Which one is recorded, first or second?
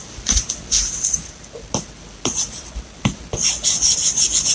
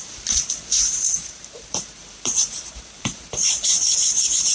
first